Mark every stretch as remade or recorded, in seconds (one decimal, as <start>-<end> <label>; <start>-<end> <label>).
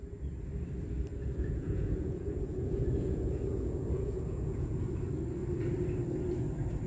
0.0-1.1 recorded; 1.1-4.8 remade; 4.8-6.9 recorded